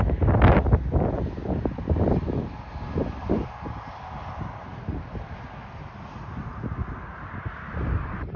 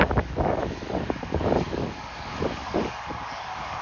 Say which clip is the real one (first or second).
first